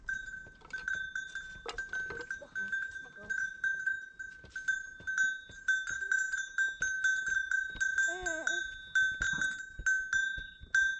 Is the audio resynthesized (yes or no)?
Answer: no